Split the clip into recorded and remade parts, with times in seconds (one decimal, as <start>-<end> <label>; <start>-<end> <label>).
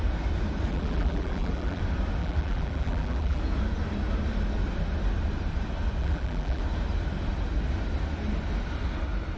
0.0-0.7 recorded; 0.7-1.8 remade; 1.8-2.2 recorded; 2.2-3.4 remade; 3.4-6.0 recorded; 6.0-6.6 remade; 6.6-9.4 recorded